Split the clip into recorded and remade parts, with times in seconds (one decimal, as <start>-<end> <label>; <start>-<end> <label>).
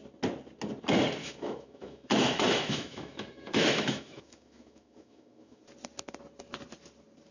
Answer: 0.0-1.2 recorded; 1.2-5.6 remade; 5.6-7.3 recorded